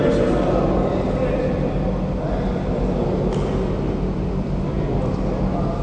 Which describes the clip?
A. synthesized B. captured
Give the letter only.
B